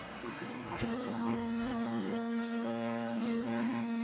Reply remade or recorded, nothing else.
remade